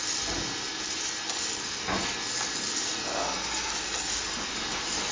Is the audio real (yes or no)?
yes